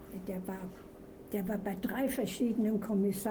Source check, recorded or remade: recorded